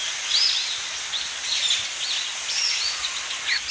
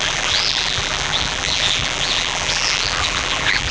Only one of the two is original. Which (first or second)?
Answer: first